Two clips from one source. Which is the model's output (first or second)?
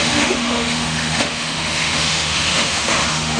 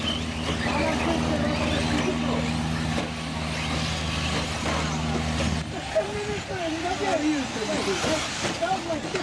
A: first